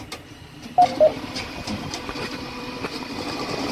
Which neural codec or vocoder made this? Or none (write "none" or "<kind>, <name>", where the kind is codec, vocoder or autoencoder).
vocoder, BigVGAN v2